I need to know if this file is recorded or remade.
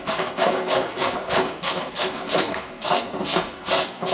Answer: remade